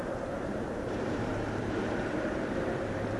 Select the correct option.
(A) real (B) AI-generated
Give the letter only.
B